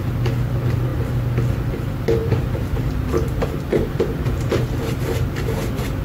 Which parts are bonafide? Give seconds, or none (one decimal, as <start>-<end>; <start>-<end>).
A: 0.0-2.2